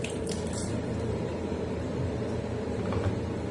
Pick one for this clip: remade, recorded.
remade